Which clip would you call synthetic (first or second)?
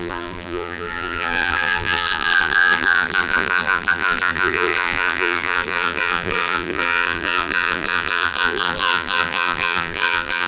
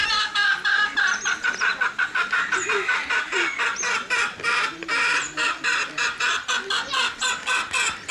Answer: first